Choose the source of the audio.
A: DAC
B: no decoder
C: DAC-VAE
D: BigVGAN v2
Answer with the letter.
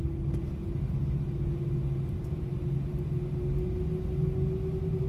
B